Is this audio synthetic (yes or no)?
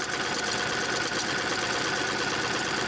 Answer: no